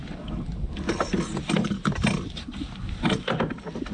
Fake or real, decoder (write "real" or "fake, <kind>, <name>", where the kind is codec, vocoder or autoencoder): real